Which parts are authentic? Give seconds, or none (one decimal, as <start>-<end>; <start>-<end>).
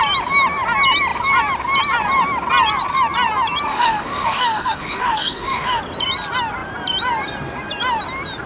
0.0-3.7; 5.8-8.5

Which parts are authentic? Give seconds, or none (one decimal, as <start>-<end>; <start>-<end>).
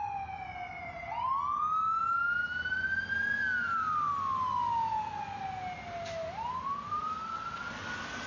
0.0-7.2; 7.7-8.3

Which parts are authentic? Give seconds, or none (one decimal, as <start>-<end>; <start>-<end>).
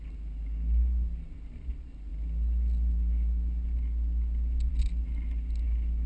0.0-6.1